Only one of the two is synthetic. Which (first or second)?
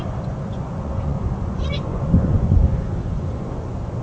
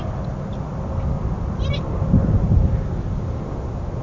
first